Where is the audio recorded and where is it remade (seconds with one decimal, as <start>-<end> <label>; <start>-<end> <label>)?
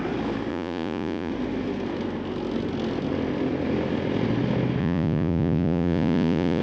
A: 0.0-0.5 recorded; 0.5-1.3 remade; 1.3-4.8 recorded; 4.8-6.6 remade